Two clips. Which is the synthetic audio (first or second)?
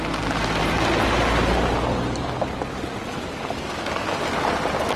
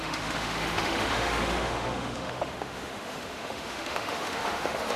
second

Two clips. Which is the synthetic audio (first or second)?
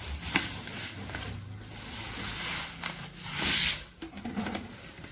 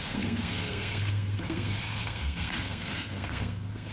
second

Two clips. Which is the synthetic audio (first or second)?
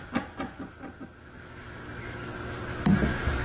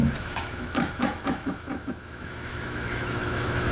second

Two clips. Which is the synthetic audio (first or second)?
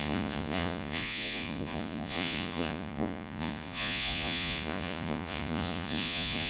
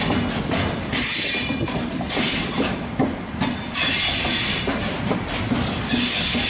first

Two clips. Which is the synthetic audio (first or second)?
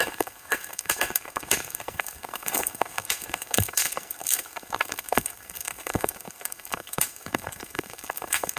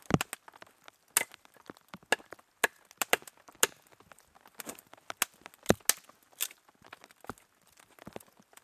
first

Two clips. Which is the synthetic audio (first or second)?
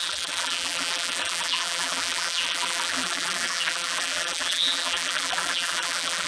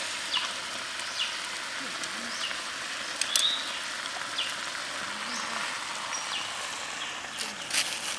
first